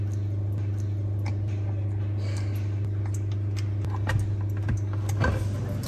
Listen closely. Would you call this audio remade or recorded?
recorded